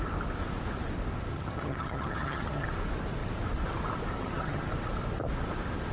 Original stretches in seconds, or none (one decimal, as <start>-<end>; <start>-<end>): 0.0-1.3; 2.7-4.2; 4.7-5.9